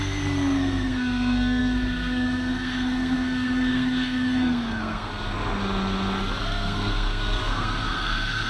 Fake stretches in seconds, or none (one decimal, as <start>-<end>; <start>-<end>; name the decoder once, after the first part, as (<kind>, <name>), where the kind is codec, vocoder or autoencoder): 0.0-5.1 (codec, SNAC); 6.4-8.5